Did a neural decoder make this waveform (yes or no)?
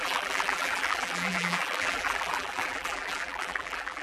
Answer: yes